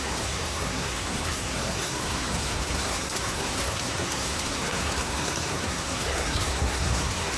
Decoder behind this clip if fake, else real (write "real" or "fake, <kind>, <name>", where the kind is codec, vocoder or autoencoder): fake, codec, SNAC